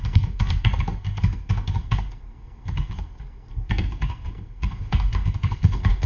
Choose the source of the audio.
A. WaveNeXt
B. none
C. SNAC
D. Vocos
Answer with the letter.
C